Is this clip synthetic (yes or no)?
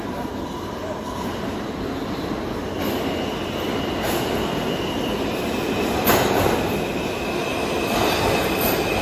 no